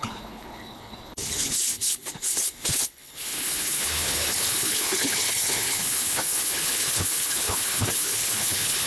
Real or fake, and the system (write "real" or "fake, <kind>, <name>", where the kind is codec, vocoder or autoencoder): fake, codec, HILCodec